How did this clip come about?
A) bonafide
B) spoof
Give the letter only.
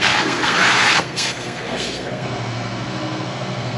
B